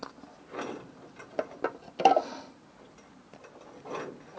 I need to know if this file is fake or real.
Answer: real